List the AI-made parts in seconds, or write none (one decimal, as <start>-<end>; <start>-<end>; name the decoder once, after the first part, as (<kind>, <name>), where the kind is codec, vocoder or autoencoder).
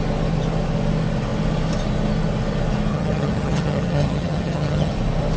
2.9-4.9 (vocoder, HiFi-GAN)